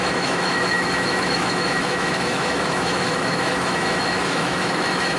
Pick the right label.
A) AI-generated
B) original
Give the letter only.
A